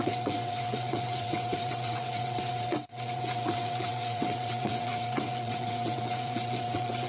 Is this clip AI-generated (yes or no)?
yes